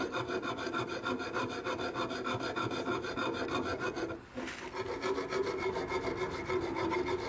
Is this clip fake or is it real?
real